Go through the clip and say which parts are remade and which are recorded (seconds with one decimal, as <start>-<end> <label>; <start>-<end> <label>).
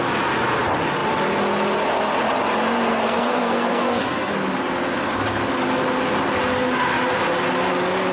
0.0-2.9 recorded; 2.9-4.3 remade; 4.3-8.1 recorded